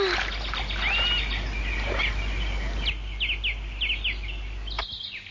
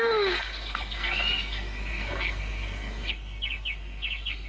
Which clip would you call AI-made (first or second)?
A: second